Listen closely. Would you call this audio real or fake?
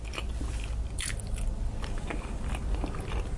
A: real